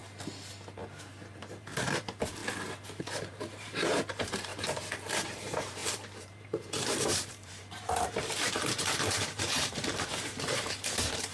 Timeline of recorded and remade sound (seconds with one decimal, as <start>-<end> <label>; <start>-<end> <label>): 0.0-1.4 recorded; 1.4-2.4 remade; 2.4-3.0 recorded; 3.0-4.5 remade; 4.5-5.1 recorded; 5.1-11.3 remade